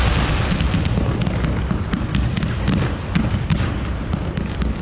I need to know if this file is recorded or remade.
recorded